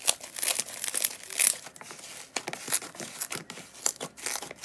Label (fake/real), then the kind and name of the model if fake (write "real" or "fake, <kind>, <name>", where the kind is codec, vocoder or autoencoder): real